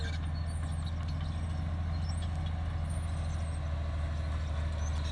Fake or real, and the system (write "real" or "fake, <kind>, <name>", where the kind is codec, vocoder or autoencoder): real